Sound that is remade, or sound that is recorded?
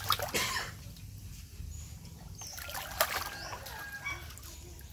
recorded